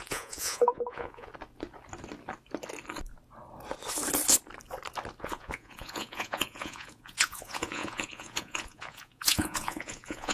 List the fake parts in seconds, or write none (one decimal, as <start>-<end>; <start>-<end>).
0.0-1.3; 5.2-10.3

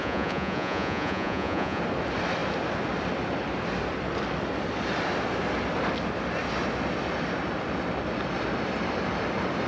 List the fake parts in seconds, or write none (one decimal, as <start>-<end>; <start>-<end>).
0.0-1.8

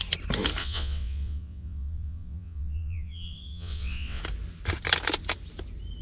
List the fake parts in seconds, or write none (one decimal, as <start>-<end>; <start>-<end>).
0.6-4.2